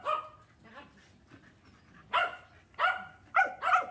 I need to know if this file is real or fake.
real